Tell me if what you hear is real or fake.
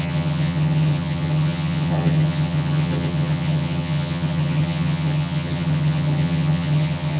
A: fake